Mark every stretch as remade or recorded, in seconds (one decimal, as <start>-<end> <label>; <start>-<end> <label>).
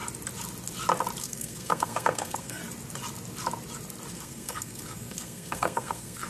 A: 0.0-1.2 recorded; 1.2-2.6 remade; 2.6-4.1 recorded; 4.1-6.3 remade